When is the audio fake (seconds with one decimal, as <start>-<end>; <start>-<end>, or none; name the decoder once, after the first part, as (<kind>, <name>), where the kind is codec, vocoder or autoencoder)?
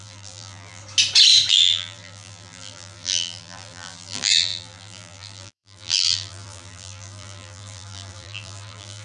0.0-0.8 (vocoder, BigVGAN v2); 1.5-9.0